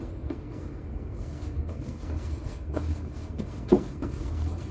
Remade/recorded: remade